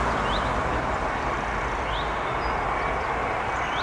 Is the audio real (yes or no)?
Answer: yes